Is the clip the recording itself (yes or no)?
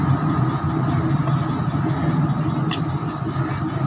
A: yes